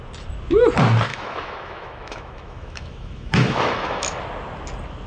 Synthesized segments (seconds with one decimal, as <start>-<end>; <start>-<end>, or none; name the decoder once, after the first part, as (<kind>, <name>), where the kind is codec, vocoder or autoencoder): 1.1-4.2 (autoencoder, DAC-VAE)